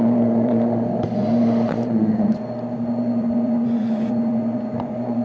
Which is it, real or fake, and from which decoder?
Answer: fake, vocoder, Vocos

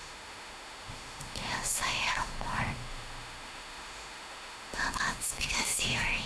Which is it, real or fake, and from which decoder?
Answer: fake, autoencoder, DAC-VAE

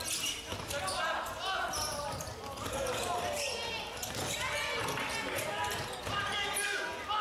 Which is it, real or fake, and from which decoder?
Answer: real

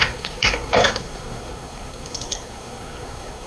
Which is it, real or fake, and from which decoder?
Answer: fake, codec, SNAC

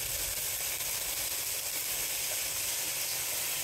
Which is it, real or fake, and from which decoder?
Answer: real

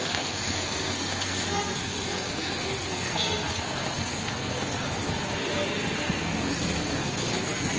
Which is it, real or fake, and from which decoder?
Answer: fake, codec, SNAC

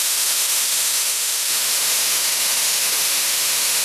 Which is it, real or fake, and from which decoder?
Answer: fake, autoencoder, DAC-VAE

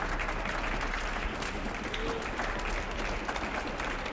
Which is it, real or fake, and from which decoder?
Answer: real